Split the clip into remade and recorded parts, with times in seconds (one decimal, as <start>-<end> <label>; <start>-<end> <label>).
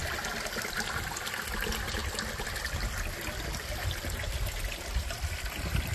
0.0-5.9 recorded